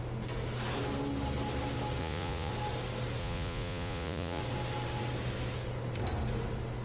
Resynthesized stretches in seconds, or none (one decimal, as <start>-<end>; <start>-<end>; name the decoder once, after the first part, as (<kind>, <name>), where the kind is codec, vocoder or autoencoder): 2.0-2.5 (vocoder, Vocos); 3.2-4.4